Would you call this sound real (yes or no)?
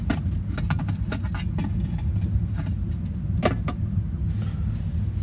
yes